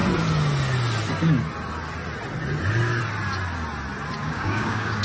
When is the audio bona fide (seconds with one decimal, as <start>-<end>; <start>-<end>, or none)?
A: 0.0-4.2

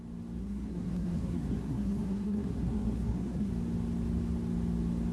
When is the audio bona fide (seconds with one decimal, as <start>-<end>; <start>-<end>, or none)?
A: 0.0-0.4; 3.5-5.1

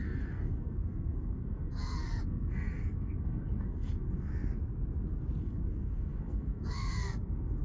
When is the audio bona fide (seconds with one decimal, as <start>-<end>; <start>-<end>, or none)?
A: 4.3-5.4